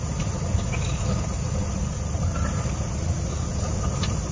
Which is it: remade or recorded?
recorded